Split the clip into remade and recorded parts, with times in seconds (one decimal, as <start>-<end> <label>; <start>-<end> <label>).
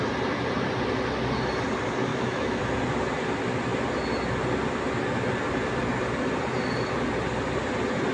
0.0-2.1 recorded; 2.1-2.6 remade; 2.6-8.1 recorded